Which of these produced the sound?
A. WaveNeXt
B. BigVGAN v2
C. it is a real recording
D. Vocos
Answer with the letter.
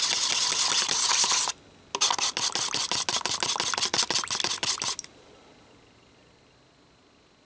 C